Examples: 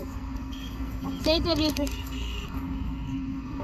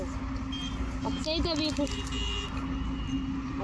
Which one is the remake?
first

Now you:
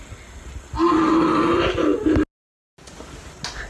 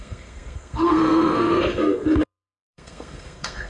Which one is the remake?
second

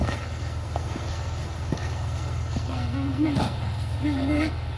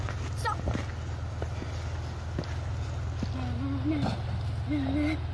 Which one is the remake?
first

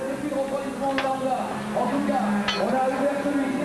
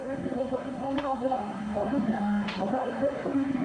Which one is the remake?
second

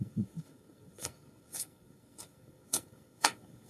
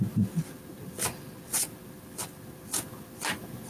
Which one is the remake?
first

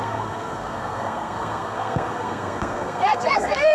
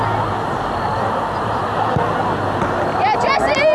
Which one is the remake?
first